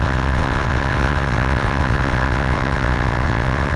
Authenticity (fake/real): fake